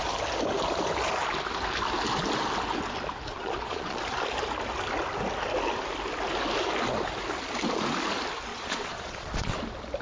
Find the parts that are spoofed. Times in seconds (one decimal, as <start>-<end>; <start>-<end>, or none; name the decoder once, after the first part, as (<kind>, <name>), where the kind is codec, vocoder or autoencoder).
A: 3.3-4.0 (vocoder, Vocos); 8.5-9.5